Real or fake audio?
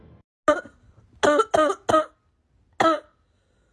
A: real